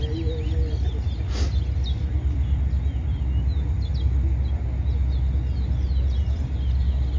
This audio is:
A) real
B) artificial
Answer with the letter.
A